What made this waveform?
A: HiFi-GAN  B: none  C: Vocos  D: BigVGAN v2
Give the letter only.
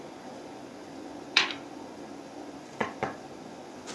C